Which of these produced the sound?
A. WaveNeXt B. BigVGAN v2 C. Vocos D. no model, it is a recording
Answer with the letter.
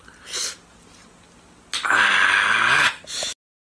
D